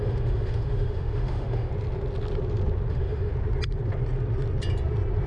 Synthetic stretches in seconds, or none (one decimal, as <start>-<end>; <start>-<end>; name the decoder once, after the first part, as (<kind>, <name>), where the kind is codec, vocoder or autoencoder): 0.0-1.7 (autoencoder, DAC-VAE); 2.9-3.3